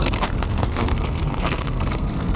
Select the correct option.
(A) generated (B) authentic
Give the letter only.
A